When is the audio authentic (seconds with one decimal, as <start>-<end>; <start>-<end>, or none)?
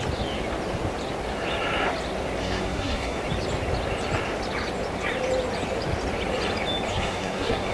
0.0-2.4; 3.2-6.9